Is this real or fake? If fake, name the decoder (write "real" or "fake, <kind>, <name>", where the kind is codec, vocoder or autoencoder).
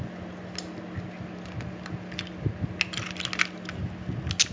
real